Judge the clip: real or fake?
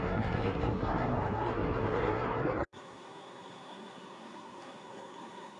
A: fake